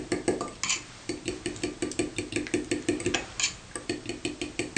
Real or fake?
real